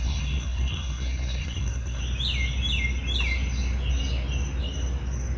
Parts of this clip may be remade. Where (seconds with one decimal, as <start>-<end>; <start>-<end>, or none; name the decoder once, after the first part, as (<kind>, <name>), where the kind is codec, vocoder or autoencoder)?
0.0-2.0 (codec, SNAC)